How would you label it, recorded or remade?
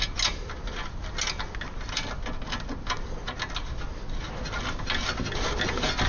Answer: recorded